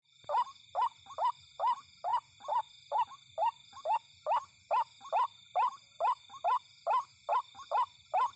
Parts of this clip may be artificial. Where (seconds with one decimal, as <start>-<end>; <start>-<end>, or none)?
none